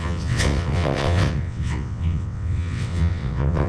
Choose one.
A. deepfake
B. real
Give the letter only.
A